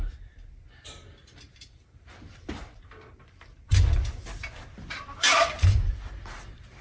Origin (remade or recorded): remade